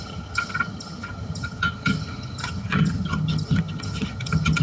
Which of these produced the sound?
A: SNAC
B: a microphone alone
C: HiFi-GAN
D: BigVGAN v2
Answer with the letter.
C